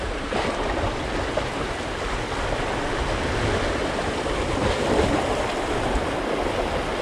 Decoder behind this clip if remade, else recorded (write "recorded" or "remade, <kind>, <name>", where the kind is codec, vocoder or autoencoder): recorded